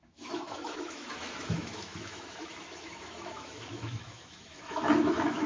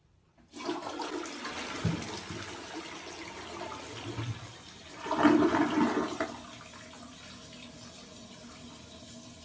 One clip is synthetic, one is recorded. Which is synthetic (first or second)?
first